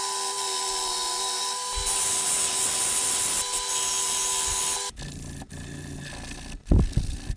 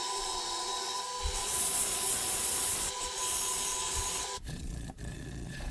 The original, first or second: first